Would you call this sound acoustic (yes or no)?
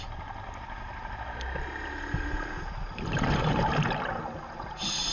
yes